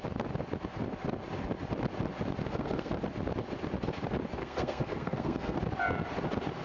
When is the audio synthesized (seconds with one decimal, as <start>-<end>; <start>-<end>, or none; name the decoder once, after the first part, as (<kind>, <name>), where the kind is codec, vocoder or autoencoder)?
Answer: 2.4-2.9 (codec, SNAC); 4.4-5.6